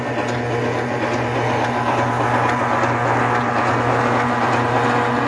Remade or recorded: recorded